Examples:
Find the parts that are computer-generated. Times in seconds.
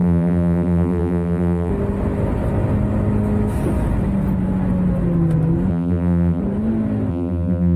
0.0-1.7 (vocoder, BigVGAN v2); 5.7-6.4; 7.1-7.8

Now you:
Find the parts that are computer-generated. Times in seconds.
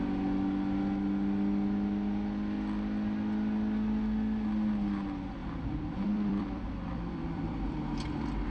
5.4-7.8 (vocoder, BigVGAN v2)